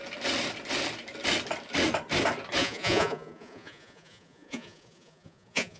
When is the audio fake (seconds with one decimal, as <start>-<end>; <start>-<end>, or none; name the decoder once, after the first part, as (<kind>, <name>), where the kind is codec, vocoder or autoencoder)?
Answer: 2.6-5.8 (vocoder, Vocos)